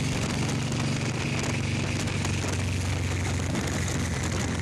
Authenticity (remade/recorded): recorded